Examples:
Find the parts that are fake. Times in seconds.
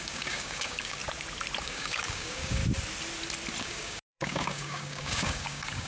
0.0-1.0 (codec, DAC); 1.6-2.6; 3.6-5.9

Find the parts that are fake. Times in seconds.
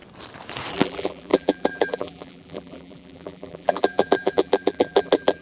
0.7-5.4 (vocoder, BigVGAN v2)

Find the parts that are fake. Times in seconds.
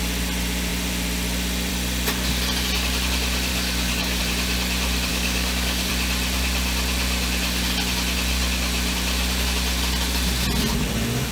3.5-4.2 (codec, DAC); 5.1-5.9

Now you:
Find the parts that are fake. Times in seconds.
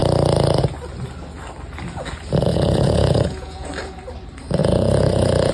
2.5-3.7 (vocoder, Vocos); 4.6-5.5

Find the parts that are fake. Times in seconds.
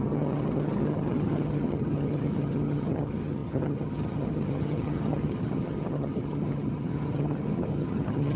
0.0-8.4 (vocoder, HiFi-GAN)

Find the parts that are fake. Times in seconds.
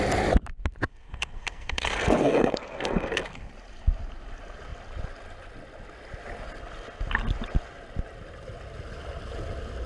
0.9-3.5 (codec, SNAC)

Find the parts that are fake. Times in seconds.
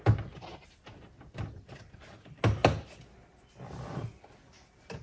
none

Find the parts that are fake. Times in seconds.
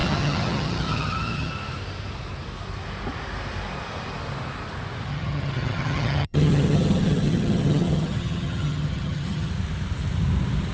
0.0-1.5 (vocoder, HiFi-GAN); 5.1-9.5